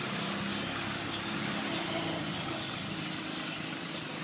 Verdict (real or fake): real